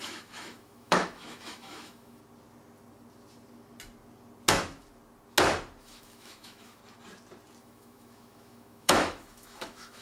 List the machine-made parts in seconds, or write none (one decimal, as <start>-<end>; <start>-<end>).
0.0-2.2; 5.8-6.8; 7.6-10.0